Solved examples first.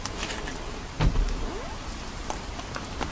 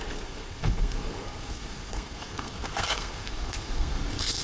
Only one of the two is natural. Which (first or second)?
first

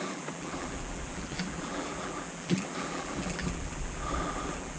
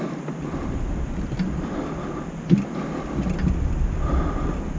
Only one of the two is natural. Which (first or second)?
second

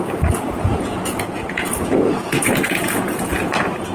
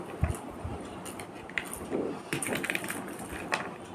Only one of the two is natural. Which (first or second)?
second